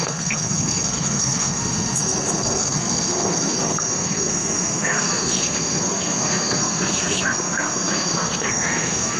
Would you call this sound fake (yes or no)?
yes